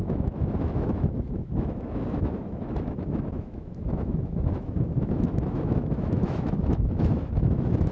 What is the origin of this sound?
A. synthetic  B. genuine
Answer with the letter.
A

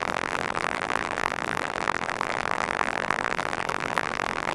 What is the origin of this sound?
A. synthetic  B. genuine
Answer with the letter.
A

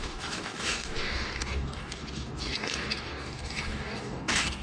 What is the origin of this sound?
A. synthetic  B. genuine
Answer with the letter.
A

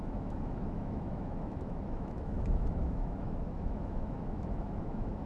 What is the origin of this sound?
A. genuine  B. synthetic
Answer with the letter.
B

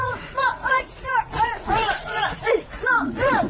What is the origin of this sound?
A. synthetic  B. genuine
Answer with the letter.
A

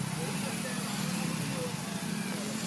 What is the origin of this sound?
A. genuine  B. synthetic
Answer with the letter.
A